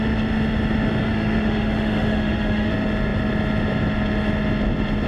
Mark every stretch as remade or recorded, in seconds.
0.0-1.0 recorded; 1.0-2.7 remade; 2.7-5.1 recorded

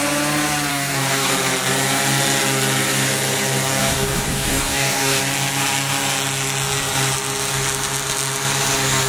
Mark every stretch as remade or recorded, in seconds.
0.0-0.7 recorded; 0.7-1.3 remade; 1.3-3.8 recorded; 3.8-5.2 remade; 5.2-9.1 recorded